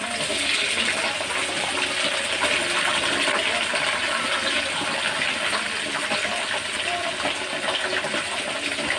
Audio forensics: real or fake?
real